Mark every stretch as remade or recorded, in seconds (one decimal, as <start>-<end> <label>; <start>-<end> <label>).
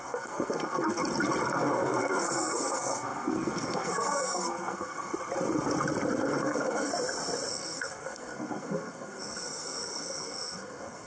0.0-1.0 remade; 1.0-1.5 recorded; 1.5-5.1 remade; 5.1-6.2 recorded; 6.2-6.9 remade; 6.9-7.5 recorded; 7.5-11.1 remade